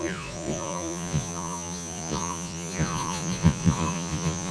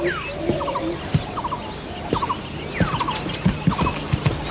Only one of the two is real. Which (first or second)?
second